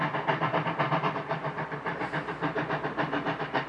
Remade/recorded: recorded